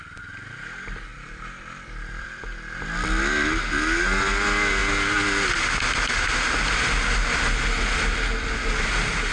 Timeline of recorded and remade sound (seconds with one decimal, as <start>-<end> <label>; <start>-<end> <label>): 0.0-1.1 recorded; 1.1-2.4 remade; 2.4-9.3 recorded